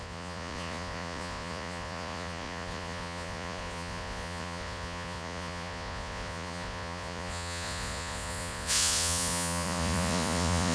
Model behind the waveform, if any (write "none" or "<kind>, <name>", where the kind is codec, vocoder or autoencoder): vocoder, Vocos